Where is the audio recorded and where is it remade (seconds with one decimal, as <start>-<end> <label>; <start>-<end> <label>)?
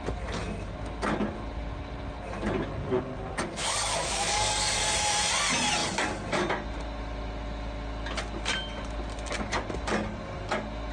0.0-3.6 recorded; 3.6-4.8 remade; 4.8-10.9 recorded